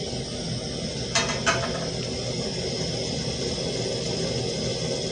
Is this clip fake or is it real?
real